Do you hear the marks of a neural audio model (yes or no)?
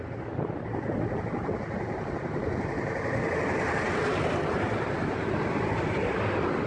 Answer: no